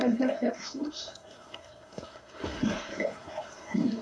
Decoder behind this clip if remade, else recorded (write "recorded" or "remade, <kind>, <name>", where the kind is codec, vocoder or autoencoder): remade, codec, SNAC